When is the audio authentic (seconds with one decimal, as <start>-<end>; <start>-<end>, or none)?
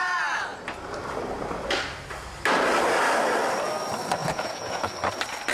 0.0-4.2; 4.9-5.5